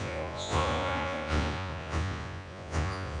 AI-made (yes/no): yes